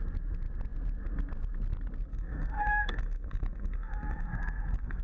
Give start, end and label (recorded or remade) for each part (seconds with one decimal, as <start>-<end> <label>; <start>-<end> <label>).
0.0-2.1 recorded; 2.1-5.0 remade